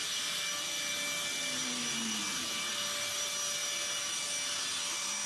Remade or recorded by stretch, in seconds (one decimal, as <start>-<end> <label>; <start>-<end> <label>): 0.0-5.3 recorded